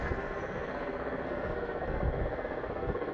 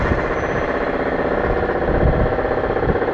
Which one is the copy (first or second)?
first